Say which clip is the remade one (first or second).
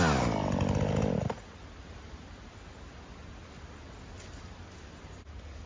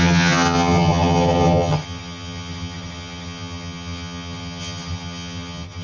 second